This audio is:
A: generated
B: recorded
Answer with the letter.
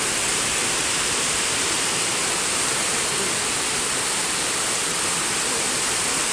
B